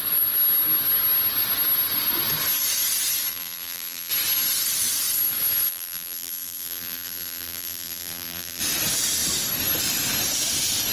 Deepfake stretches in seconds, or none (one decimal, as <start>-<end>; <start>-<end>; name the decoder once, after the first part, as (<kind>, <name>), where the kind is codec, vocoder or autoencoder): 3.3-4.1 (vocoder, BigVGAN v2); 5.7-8.6